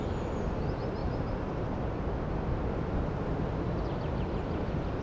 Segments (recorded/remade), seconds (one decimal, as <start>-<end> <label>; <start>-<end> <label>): 0.0-5.0 recorded